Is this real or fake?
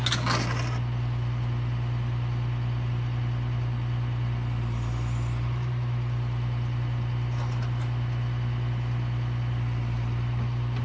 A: real